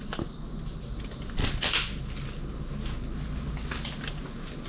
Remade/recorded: recorded